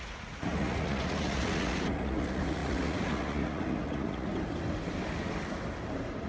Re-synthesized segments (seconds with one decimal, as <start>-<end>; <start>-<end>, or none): 0.0-4.3